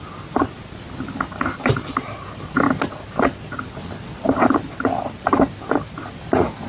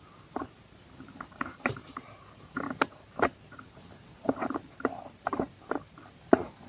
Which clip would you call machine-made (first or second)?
second